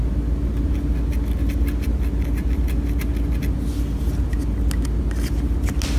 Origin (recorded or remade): recorded